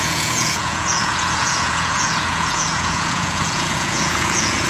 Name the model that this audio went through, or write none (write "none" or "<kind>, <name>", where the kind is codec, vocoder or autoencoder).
vocoder, Vocos